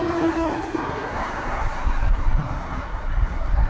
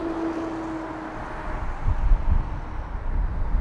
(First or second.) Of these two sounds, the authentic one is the second